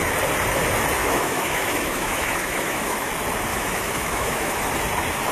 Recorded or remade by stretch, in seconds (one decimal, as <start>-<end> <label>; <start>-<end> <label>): 0.0-1.0 recorded; 1.0-3.1 remade; 3.1-3.5 recorded; 3.5-4.7 remade; 4.7-5.3 recorded